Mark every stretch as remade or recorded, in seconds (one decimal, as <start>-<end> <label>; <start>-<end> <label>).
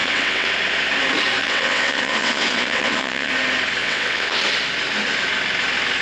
0.0-0.5 remade; 0.5-1.4 recorded; 1.4-3.3 remade; 3.3-3.8 recorded; 3.8-4.4 remade; 4.4-6.0 recorded